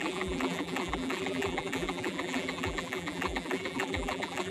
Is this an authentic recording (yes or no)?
no